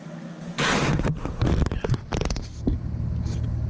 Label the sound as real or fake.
real